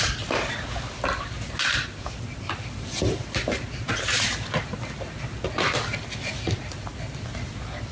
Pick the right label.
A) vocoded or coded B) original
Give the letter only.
B